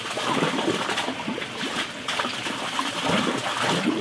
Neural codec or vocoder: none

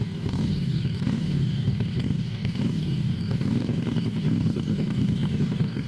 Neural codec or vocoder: codec, DAC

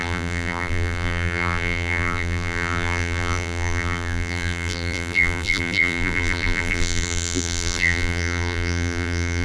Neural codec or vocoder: vocoder, BigVGAN v2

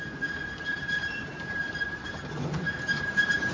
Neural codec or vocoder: vocoder, BigVGAN v2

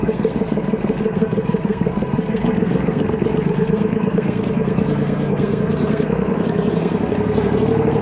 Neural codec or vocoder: codec, SNAC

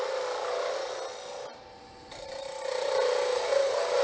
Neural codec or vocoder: none